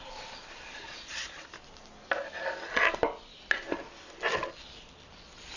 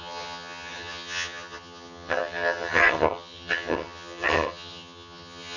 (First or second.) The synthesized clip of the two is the second